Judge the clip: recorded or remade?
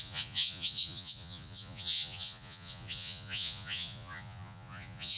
remade